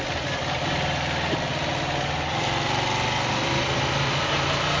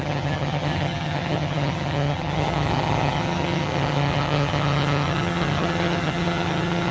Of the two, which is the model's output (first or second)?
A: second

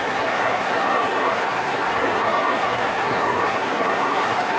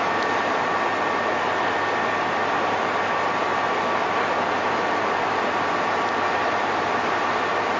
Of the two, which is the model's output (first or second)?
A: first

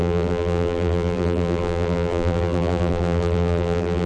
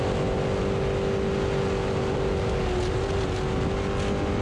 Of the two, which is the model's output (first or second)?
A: first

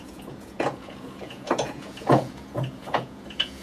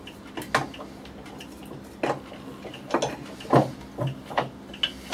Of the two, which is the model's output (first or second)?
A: first